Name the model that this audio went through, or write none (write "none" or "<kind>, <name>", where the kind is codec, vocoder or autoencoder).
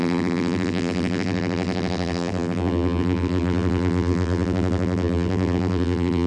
vocoder, BigVGAN v2